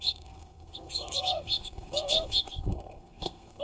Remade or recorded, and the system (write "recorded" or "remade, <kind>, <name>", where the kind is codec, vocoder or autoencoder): remade, codec, SNAC